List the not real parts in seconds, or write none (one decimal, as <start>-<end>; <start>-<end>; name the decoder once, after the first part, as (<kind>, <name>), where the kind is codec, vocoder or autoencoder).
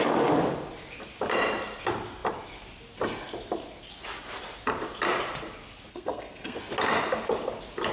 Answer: 5.9-6.6 (codec, SNAC)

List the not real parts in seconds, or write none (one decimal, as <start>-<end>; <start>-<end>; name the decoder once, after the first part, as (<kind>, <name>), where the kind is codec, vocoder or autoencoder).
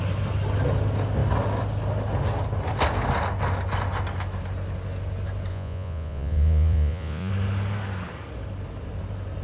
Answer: 5.5-7.3 (vocoder, Vocos)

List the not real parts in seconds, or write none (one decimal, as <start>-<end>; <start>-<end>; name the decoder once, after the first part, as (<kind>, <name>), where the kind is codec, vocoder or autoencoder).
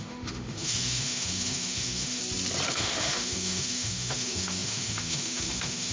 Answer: 0.0-2.2 (autoencoder, DAC-VAE); 2.7-5.9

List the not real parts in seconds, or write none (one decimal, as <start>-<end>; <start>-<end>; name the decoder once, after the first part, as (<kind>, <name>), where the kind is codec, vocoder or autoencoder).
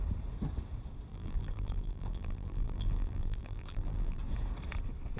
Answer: 1.1-4.2 (vocoder, BigVGAN v2)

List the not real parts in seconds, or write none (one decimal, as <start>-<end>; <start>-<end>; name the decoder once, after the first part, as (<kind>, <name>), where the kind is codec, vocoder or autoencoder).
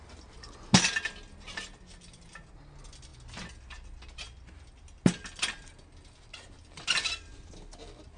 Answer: none